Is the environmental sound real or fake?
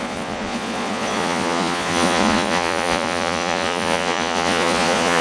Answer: fake